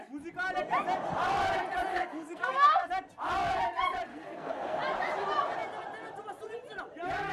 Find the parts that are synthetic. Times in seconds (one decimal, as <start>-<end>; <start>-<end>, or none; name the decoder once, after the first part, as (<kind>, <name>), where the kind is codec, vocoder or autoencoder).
1.9-2.9 (codec, SNAC); 4.1-4.8